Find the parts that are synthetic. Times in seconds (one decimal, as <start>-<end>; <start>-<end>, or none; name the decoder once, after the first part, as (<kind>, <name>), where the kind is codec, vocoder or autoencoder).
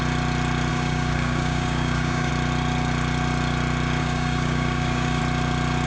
0.7-2.3 (codec, DAC); 4.0-5.2